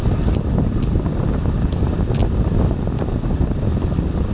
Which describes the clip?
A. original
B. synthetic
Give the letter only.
A